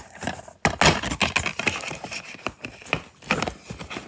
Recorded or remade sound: recorded